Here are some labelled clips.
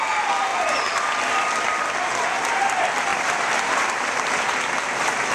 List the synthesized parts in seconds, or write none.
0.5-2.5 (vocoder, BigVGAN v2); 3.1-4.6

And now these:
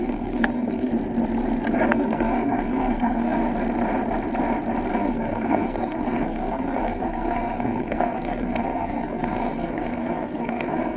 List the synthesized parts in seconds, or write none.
0.0-0.9 (codec, SNAC); 1.9-3.4; 4.9-11.0

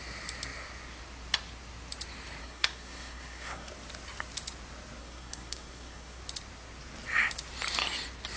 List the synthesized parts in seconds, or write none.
2.4-3.7 (codec, SNAC); 5.0-6.2

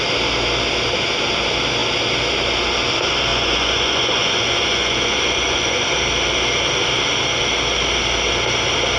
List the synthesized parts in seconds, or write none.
3.3-5.9 (vocoder, Vocos)

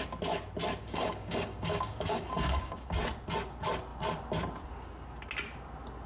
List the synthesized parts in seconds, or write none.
0.8-2.9 (codec, DAC)